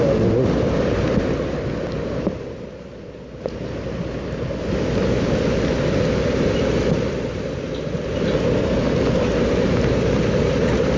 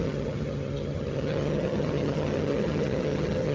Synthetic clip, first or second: second